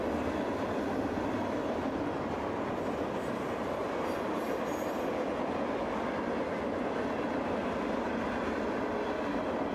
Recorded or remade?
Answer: recorded